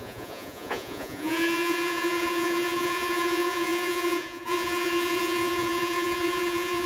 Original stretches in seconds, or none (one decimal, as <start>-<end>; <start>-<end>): none